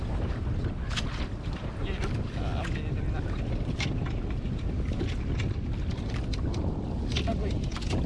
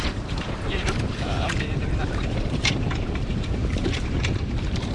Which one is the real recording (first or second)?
first